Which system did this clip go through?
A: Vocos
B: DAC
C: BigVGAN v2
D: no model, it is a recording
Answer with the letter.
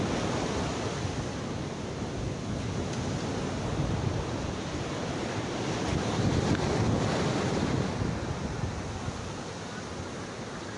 D